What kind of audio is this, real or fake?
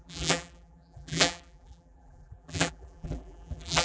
fake